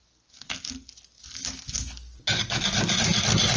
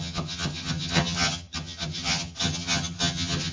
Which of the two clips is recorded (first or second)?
first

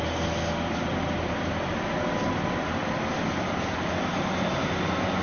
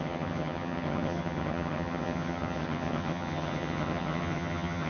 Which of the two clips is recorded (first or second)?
first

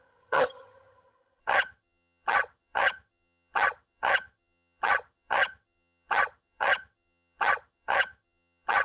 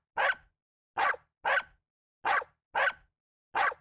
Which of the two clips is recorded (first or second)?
second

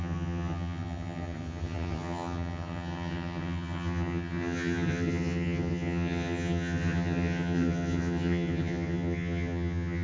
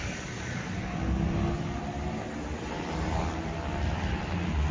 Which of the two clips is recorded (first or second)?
second